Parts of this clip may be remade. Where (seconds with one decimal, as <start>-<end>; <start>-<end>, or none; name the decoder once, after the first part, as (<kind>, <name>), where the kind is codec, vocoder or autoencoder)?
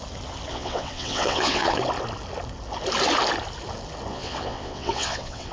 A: 0.5-1.8 (vocoder, WaveNeXt); 4.1-5.5